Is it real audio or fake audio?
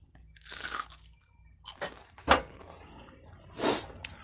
real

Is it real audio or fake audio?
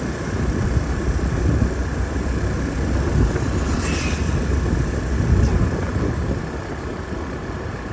real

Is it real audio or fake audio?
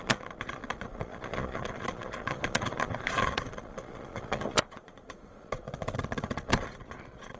fake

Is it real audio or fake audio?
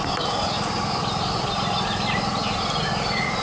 real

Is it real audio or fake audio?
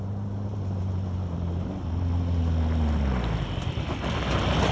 real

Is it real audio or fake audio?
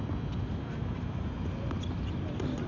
real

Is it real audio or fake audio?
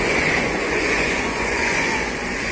fake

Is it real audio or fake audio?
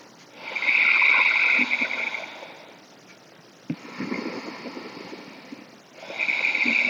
real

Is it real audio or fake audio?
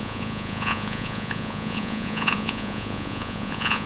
fake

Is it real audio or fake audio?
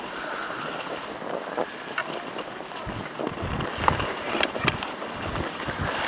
real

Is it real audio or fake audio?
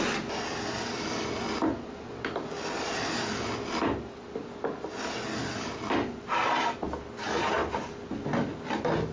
real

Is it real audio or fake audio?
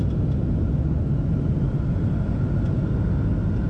real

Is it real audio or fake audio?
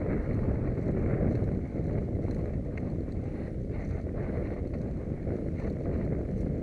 real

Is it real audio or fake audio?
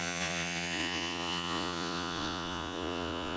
fake